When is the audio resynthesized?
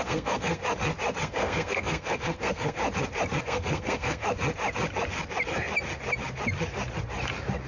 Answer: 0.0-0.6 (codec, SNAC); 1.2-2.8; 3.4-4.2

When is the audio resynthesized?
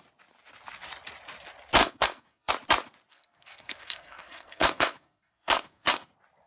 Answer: 1.8-2.5 (codec, SNAC); 3.1-6.1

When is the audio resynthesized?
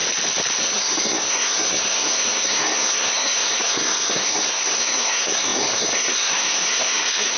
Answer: 0.6-7.4 (codec, SNAC)